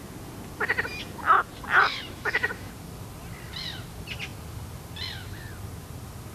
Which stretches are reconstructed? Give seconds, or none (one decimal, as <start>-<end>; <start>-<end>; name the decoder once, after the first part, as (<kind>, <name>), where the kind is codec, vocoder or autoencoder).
1.9-2.7 (autoencoder, DAC-VAE)